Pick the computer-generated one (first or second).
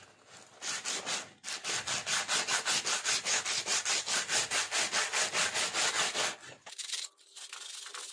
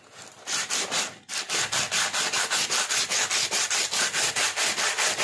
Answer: second